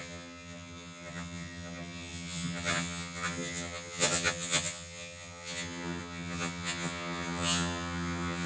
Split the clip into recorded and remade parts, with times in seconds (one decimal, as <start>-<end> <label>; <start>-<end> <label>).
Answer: 0.0-8.5 remade